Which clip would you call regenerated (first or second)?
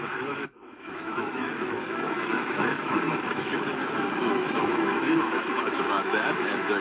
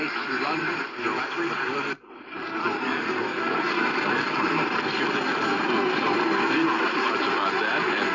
first